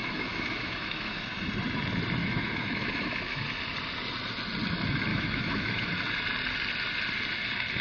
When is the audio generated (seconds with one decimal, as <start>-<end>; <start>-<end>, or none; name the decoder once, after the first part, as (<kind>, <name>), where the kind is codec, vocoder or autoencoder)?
0.0-1.3 (autoencoder, DAC-VAE); 2.2-3.4; 5.1-5.9